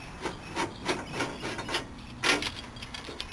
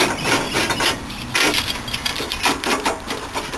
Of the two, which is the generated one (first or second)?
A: second